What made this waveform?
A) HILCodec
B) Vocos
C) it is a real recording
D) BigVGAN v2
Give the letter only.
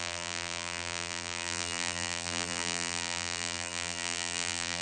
D